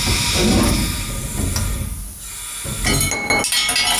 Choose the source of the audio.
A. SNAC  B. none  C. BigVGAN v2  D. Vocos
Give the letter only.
B